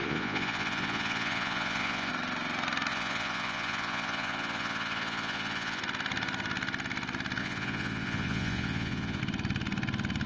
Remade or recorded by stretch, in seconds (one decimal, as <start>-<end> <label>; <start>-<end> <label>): 0.0-2.1 remade; 2.1-2.9 recorded; 2.9-5.8 remade; 5.8-7.4 recorded; 7.4-9.2 remade; 9.2-10.3 recorded